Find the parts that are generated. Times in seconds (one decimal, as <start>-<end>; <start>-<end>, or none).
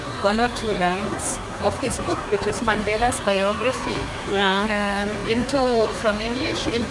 0.0-6.9